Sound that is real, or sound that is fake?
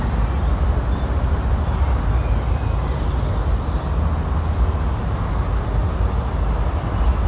real